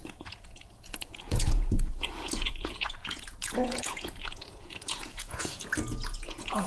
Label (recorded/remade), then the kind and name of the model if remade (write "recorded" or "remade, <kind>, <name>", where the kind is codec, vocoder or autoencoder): remade, vocoder, Vocos